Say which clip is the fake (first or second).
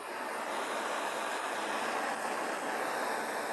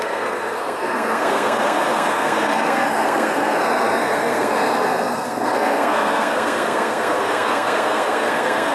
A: second